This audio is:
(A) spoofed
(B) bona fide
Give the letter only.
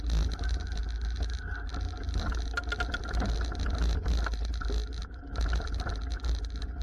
B